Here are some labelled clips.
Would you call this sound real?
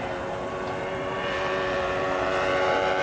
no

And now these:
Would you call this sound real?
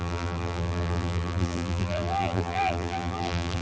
no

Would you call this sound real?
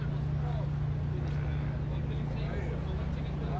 yes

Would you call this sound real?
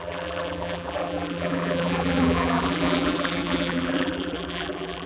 no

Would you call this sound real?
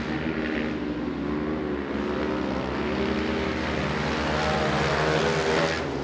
yes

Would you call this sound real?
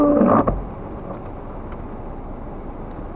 yes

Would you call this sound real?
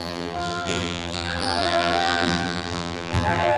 no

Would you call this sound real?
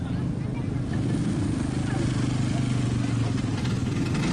yes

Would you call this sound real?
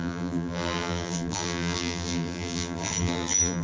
no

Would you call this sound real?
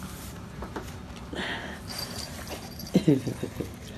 no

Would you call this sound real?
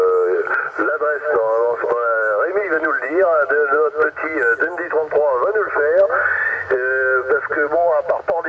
yes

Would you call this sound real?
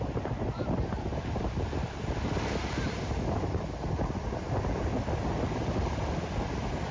yes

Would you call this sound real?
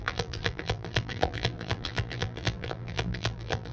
no